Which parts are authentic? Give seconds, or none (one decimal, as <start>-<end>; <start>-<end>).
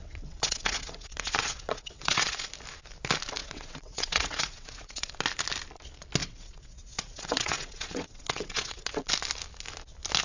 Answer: 2.5-3.4; 5.1-6.2; 9.1-10.2